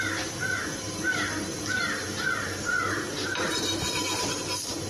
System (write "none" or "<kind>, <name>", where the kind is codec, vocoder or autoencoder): vocoder, BigVGAN v2